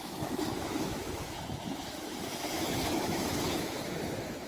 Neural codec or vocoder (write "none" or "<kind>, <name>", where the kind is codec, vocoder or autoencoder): autoencoder, DAC-VAE